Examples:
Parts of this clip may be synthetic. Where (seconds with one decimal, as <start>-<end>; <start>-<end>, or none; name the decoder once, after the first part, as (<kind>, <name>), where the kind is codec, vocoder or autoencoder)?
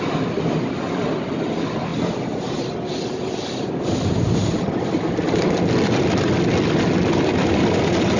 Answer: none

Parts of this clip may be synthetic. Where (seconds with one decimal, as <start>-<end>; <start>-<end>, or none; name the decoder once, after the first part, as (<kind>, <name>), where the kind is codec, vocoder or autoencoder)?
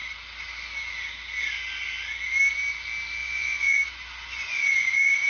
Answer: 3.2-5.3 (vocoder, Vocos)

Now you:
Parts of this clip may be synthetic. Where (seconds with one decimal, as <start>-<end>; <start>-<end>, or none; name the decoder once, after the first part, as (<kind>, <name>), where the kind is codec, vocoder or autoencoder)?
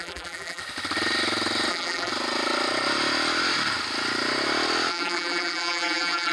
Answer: 0.0-0.6 (vocoder, BigVGAN v2); 1.7-2.1; 4.9-6.3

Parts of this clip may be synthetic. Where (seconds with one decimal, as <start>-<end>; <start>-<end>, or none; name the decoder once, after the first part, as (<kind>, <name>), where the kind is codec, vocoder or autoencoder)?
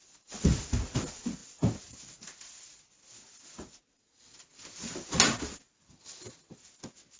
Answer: none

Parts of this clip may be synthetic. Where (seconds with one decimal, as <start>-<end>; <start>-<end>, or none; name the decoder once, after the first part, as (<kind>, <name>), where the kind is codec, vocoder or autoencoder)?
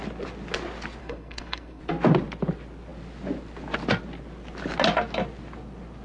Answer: 1.0-1.8 (codec, SNAC)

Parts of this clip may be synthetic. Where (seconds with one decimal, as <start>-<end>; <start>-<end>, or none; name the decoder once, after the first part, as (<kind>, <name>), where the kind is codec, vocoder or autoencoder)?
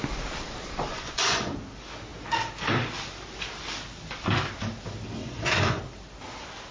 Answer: 0.9-1.5 (vocoder, Vocos); 5.2-5.8